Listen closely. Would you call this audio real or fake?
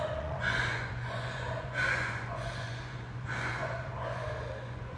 fake